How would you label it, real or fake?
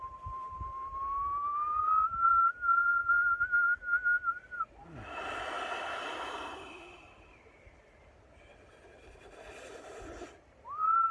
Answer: real